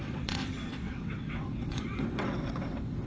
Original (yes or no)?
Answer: no